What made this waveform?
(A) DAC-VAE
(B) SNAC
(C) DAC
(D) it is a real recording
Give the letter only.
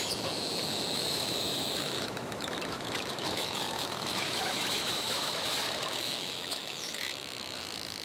A